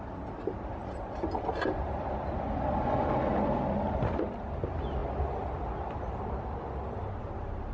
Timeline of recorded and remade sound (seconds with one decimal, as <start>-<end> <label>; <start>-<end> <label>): 0.0-7.7 recorded